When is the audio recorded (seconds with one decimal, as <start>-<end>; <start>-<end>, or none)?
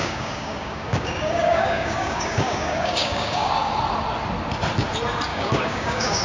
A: 3.5-5.3